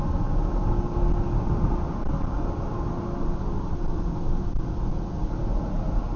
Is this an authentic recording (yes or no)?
yes